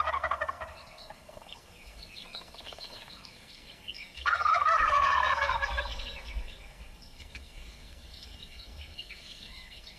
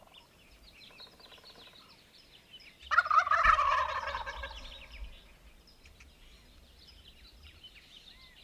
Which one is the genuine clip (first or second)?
second